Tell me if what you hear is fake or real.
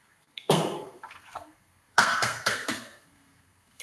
fake